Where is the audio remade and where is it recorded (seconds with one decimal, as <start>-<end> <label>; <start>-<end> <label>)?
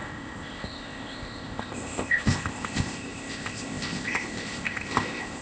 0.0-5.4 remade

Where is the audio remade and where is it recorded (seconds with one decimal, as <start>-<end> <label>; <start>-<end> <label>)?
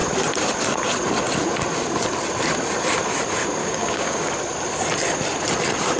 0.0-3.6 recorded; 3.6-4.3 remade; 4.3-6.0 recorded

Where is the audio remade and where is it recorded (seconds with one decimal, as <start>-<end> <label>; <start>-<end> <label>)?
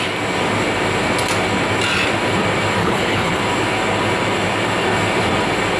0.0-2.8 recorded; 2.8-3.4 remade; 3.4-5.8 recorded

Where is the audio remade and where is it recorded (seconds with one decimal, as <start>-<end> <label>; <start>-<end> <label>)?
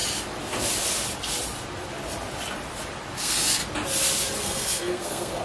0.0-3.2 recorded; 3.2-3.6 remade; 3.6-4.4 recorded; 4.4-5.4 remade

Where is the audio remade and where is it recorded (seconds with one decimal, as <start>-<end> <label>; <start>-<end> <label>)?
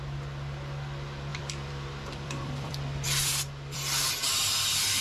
0.0-1.3 recorded; 1.3-4.1 remade; 4.1-5.0 recorded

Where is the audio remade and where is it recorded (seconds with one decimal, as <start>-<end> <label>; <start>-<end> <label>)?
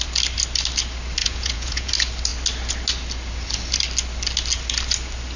0.0-1.2 recorded; 1.2-1.9 remade; 1.9-5.4 recorded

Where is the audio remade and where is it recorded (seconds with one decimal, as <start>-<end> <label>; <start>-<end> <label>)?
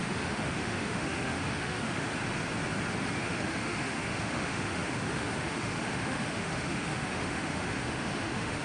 0.0-2.1 remade; 2.1-3.2 recorded; 3.2-8.6 remade